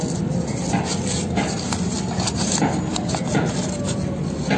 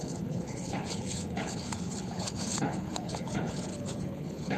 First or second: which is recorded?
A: first